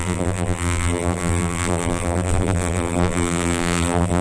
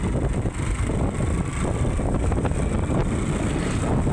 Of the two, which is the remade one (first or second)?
first